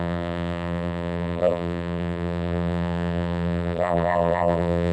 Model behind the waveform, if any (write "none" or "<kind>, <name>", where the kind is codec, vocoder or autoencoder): vocoder, BigVGAN v2